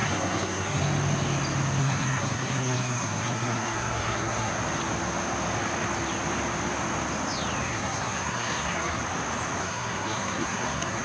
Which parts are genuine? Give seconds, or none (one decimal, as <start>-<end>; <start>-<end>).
0.8-1.8; 4.5-7.6; 9.0-9.6